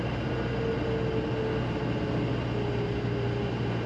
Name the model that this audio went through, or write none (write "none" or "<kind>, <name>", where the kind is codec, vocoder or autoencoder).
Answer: none